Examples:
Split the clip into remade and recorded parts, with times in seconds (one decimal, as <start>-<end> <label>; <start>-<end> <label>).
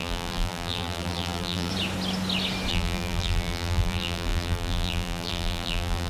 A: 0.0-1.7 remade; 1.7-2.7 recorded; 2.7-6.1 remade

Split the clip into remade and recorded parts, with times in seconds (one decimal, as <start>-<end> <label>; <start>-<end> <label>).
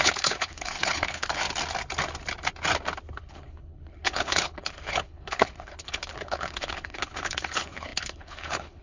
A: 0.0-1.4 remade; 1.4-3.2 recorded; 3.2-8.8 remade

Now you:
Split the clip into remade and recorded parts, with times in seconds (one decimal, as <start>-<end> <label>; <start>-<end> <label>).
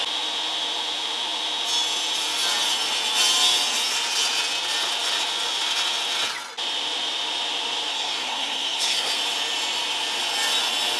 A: 0.0-7.9 recorded; 7.9-9.1 remade; 9.1-11.0 recorded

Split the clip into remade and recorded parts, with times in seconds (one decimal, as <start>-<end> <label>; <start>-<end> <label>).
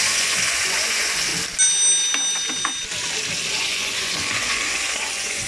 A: 0.0-1.3 remade; 1.3-3.5 recorded; 3.5-5.5 remade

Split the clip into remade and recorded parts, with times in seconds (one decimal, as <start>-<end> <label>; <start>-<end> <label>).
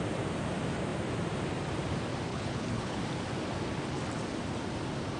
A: 0.0-2.3 recorded; 2.3-3.0 remade; 3.0-5.2 recorded